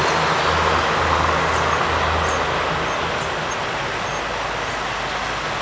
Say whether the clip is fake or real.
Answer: real